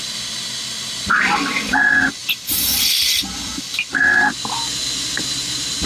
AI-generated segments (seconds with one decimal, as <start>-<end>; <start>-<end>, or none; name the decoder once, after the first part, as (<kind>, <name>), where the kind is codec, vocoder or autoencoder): none